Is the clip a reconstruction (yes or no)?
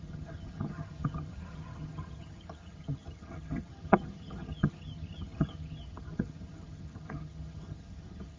yes